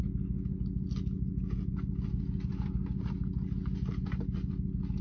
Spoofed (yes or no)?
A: no